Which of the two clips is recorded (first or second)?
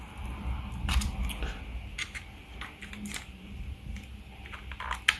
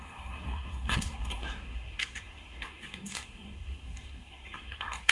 first